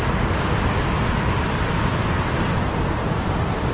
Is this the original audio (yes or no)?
yes